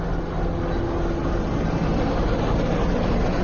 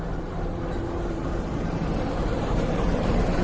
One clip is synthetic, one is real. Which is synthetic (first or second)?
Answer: second